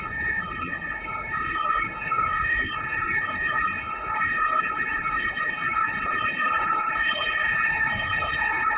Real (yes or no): no